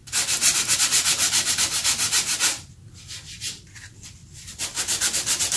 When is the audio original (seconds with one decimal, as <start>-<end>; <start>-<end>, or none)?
0.0-3.1